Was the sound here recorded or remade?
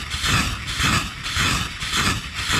remade